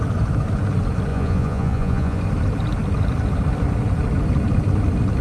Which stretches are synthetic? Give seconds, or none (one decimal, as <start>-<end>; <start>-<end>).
1.1-2.2